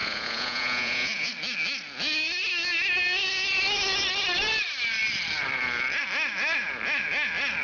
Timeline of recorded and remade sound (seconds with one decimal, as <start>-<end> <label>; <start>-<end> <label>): 0.0-1.3 remade; 1.3-7.6 recorded

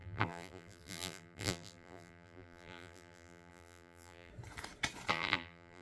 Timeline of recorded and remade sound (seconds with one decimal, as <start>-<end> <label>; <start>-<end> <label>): 0.0-4.3 remade; 4.3-5.1 recorded; 5.1-5.8 remade

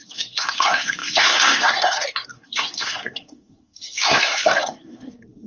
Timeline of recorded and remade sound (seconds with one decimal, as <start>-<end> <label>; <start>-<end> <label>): 0.0-5.5 remade